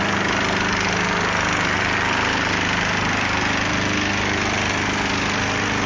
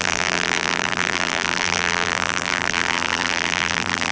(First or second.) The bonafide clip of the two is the first